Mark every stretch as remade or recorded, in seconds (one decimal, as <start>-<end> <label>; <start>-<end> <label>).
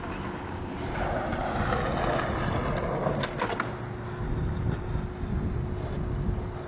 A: 0.0-6.7 recorded